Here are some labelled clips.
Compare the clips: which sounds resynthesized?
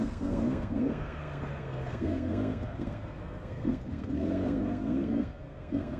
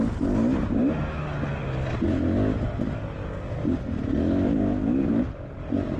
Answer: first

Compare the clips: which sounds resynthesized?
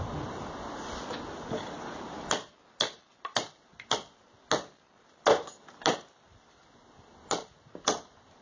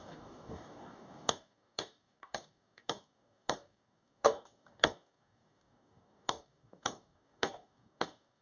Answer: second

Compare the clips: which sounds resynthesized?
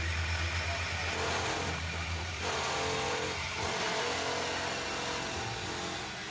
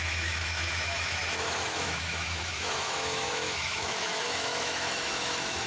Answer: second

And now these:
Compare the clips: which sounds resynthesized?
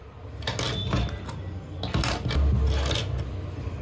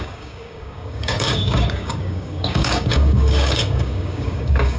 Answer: second